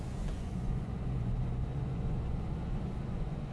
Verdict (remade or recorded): remade